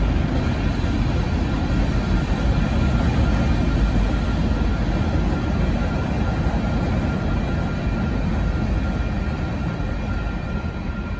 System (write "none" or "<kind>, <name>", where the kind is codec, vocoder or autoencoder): none